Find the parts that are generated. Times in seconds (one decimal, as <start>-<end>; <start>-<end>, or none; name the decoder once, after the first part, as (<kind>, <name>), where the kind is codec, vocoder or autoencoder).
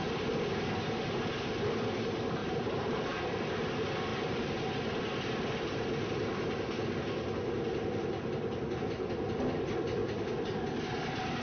2.4-3.4 (vocoder, BigVGAN v2); 4.1-4.7